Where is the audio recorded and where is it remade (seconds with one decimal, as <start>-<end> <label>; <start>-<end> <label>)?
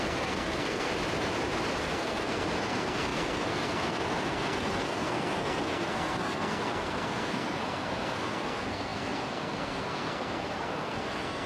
0.0-0.9 remade; 0.9-1.8 recorded; 1.8-11.5 remade